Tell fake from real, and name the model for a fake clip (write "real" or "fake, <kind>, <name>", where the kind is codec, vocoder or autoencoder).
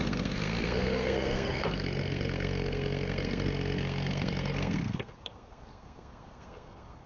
fake, codec, SNAC